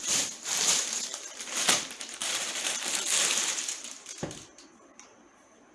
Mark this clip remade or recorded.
remade